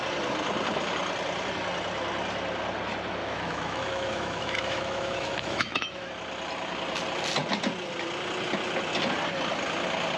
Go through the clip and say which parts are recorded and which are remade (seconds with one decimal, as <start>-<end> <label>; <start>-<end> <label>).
0.0-3.2 recorded; 3.2-6.1 remade; 6.1-10.2 recorded